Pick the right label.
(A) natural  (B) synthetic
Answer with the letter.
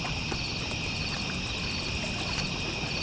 A